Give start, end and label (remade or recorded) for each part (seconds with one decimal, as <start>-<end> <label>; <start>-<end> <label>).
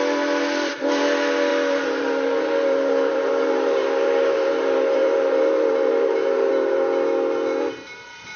0.0-1.5 recorded; 1.5-6.5 remade; 6.5-8.4 recorded